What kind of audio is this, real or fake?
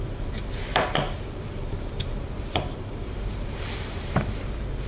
fake